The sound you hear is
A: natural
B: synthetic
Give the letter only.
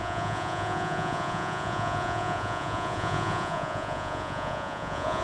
B